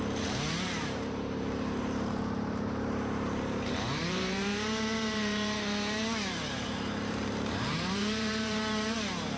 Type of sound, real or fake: fake